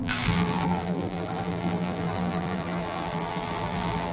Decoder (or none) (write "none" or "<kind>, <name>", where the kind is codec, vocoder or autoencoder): vocoder, BigVGAN v2